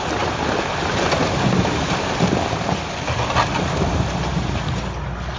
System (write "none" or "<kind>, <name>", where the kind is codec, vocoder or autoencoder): none